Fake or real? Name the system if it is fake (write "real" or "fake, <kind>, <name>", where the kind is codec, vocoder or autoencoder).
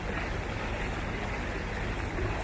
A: real